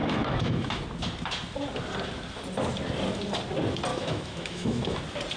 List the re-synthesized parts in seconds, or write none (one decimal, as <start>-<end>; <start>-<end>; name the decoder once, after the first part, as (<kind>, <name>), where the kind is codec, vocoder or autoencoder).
0.0-0.8 (autoencoder, DAC-VAE); 3.9-5.0